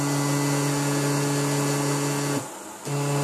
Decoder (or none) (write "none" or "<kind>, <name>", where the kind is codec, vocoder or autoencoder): none